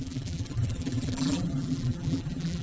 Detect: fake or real fake